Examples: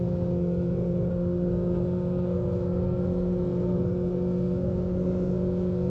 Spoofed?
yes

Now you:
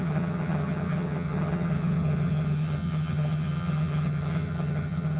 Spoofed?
yes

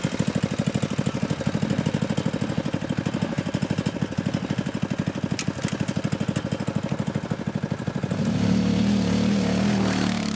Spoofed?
no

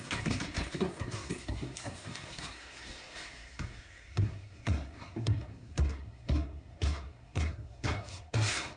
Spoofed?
yes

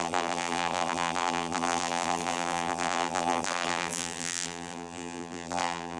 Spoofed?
yes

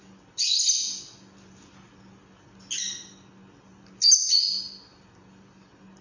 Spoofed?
no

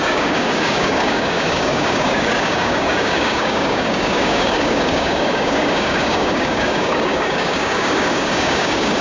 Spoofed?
yes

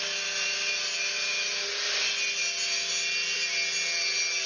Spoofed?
no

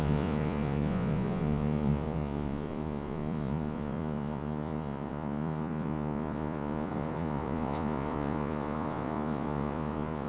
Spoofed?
yes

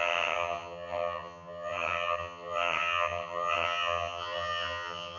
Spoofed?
yes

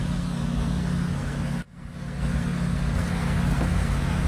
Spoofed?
yes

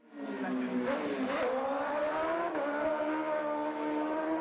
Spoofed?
no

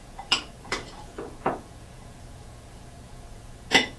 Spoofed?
yes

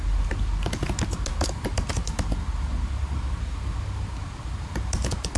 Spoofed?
no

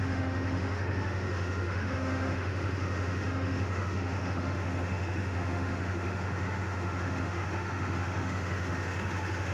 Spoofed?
yes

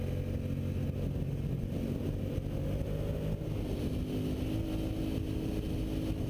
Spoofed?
no